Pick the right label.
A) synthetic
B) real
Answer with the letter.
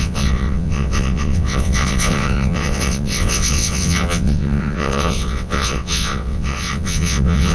A